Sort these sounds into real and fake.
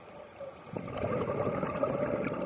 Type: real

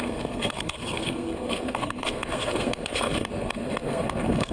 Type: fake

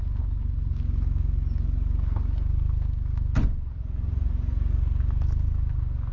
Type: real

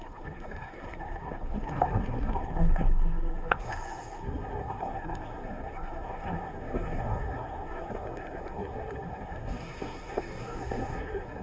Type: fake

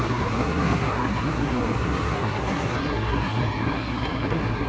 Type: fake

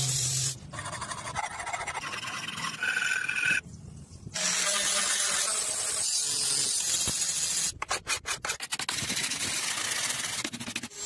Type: real